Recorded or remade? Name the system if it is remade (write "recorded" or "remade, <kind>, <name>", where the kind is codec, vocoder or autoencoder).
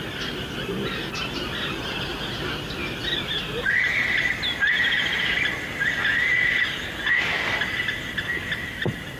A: recorded